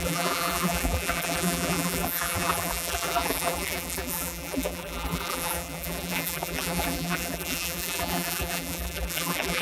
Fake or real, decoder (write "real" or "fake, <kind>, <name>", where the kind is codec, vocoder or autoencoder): fake, vocoder, BigVGAN v2